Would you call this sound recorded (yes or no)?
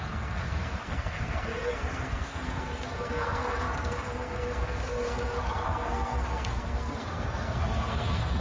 no